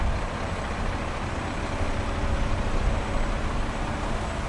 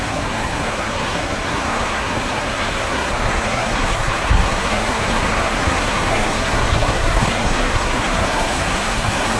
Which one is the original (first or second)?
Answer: first